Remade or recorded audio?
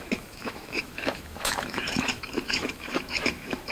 remade